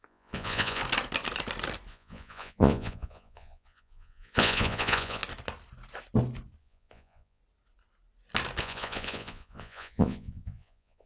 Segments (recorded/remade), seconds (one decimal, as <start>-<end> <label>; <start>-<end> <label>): 0.0-0.8 remade; 0.8-1.9 recorded; 1.9-5.2 remade; 5.2-6.6 recorded; 6.6-7.4 remade; 7.4-8.6 recorded; 8.6-11.1 remade